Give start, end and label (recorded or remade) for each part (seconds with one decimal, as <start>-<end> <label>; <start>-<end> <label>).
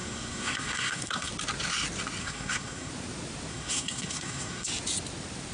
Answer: 0.0-1.3 remade; 1.3-2.2 recorded; 2.2-2.9 remade; 2.9-3.5 recorded; 3.5-4.7 remade; 4.7-5.5 recorded